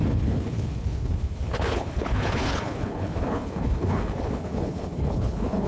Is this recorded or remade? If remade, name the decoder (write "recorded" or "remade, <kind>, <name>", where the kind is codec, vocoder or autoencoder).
remade, codec, HILCodec